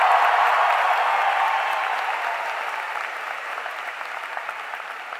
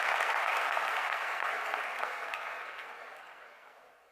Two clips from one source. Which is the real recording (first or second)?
first